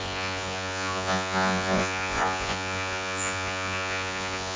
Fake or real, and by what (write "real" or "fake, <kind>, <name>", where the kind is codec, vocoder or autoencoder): fake, vocoder, Vocos